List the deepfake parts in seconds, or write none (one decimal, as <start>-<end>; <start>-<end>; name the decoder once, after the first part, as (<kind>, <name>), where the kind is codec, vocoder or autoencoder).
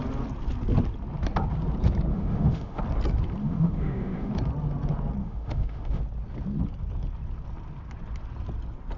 2.1-2.8 (autoencoder, DAC-VAE); 3.4-4.3; 5.2-6.0